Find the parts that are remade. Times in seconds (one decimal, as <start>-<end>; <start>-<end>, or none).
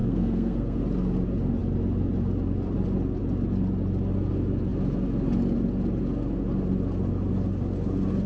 0.0-0.8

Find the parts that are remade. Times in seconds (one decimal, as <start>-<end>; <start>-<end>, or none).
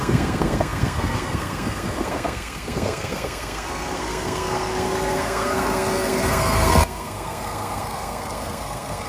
0.0-9.1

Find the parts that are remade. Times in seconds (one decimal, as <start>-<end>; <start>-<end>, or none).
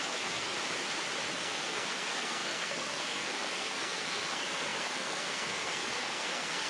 0.0-0.5; 1.3-6.7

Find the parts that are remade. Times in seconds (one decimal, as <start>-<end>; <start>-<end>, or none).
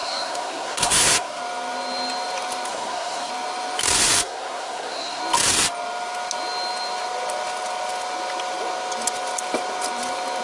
0.0-1.4; 2.7-3.3; 4.2-5.2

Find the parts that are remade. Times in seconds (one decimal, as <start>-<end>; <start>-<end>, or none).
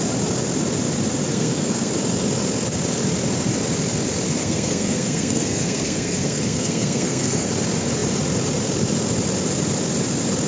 1.3-1.9; 4.4-7.5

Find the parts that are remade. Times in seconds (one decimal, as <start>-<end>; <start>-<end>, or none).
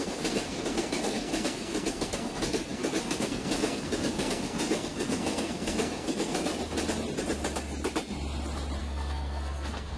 0.0-6.5; 8.8-10.0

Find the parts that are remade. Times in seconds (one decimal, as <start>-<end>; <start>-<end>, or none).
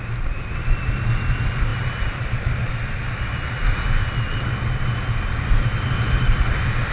none